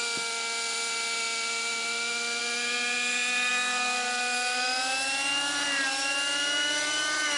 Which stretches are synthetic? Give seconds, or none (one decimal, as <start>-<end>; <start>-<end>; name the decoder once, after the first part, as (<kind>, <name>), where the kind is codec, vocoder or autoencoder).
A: none